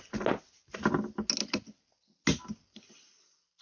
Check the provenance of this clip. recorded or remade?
recorded